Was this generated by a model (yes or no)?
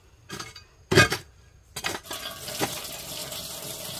no